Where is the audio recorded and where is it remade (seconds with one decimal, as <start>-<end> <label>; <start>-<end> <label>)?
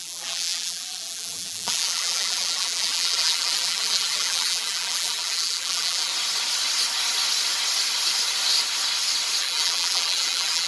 0.0-6.1 remade; 6.1-9.4 recorded; 9.4-10.7 remade